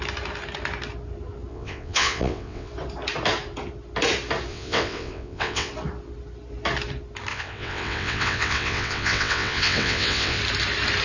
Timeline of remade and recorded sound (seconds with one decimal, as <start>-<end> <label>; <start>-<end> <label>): 0.0-1.5 recorded; 1.5-2.7 remade; 2.7-4.5 recorded; 4.5-5.7 remade; 5.7-7.3 recorded; 7.3-10.4 remade; 10.4-11.0 recorded